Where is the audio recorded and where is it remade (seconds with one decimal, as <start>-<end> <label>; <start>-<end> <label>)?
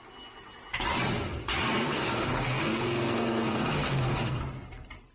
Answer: 0.0-1.8 recorded; 1.8-4.4 remade; 4.4-5.1 recorded